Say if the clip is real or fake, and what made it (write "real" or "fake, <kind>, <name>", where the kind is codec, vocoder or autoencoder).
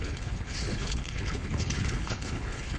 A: fake, codec, HILCodec